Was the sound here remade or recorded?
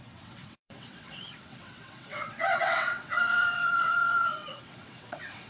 remade